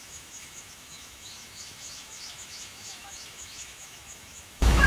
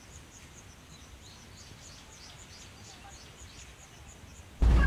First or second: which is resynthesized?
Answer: first